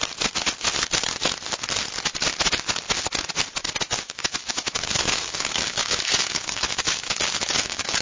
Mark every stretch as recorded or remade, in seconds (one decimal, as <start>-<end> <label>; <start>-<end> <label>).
0.0-4.0 recorded; 4.0-8.0 remade